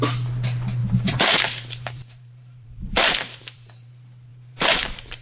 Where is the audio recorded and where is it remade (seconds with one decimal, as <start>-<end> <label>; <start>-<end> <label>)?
0.0-0.8 recorded; 0.8-3.9 remade; 3.9-4.3 recorded; 4.3-5.2 remade